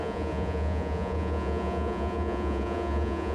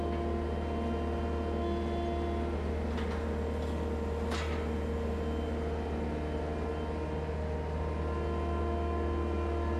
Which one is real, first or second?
second